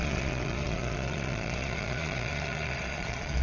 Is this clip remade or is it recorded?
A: remade